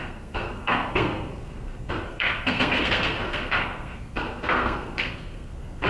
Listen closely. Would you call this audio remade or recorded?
remade